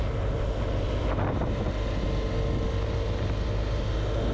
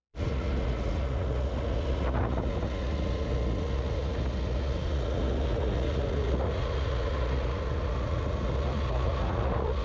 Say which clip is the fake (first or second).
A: second